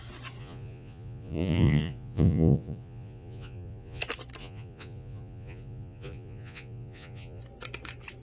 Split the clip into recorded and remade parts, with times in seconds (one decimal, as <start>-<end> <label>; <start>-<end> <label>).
0.0-0.4 recorded; 0.4-4.0 remade; 4.0-4.4 recorded; 4.4-7.4 remade; 7.4-8.2 recorded